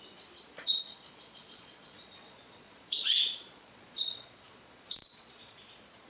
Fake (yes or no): yes